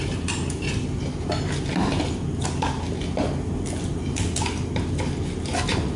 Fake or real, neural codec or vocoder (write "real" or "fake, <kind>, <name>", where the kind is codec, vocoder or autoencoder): real